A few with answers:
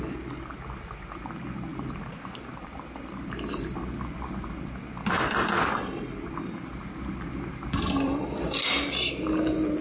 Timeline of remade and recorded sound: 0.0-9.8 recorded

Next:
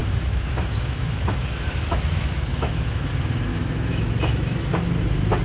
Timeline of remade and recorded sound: 0.0-3.1 remade; 3.1-3.5 recorded; 3.5-4.7 remade; 4.7-5.4 recorded

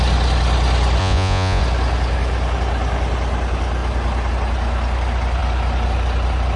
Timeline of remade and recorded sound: 0.0-1.0 recorded; 1.0-1.6 remade; 1.6-6.6 recorded

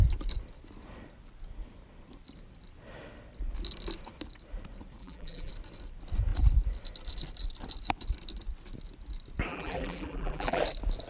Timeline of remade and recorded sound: 0.0-5.0 recorded; 5.0-5.5 remade; 5.5-9.5 recorded; 9.5-10.6 remade; 10.6-11.1 recorded

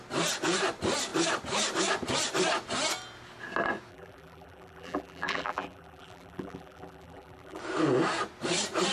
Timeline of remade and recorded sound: 0.0-3.9 recorded; 3.9-7.6 remade; 7.6-8.9 recorded

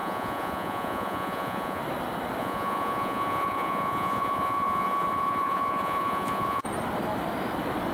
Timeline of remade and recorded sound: 0.0-1.8 remade; 1.8-2.4 recorded; 2.4-6.6 remade; 6.6-7.9 recorded